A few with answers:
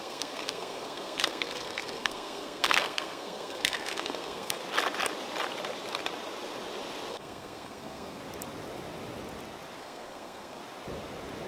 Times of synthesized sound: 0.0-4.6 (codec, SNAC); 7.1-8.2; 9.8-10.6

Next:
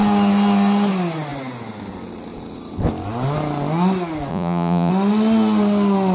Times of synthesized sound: 4.3-4.9 (vocoder, Vocos)

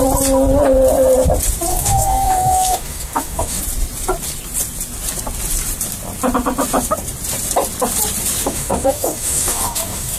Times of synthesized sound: 1.7-3.6 (codec, DAC); 8.4-10.2

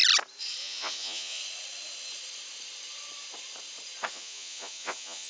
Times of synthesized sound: 0.6-1.4 (vocoder, Vocos); 4.1-5.3

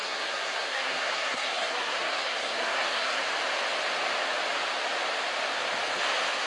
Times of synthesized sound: 0.0-3.2 (codec, SNAC)

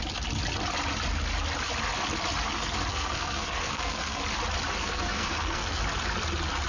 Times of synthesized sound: 2.9-4.2 (codec, SNAC); 4.8-5.8

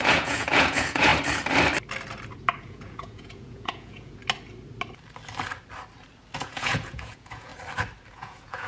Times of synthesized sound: 0.0-1.1 (vocoder, Vocos); 2.6-4.2; 6.4-7.5; 8.1-8.7

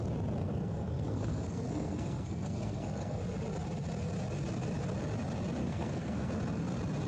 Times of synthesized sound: 0.4-3.2 (codec, SNAC); 5.6-6.3